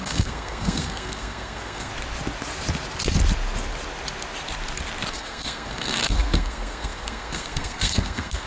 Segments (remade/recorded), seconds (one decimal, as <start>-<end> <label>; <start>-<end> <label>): 0.0-1.9 remade; 1.9-5.1 recorded; 5.1-8.5 remade